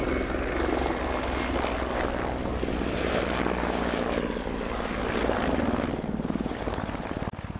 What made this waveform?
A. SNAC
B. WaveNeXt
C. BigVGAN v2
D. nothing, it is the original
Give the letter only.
D